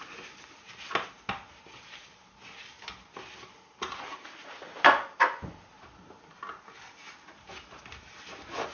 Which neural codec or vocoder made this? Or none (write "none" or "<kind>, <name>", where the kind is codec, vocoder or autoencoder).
none